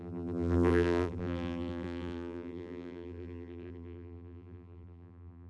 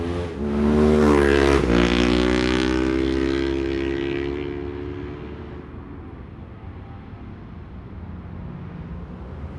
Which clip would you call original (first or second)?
second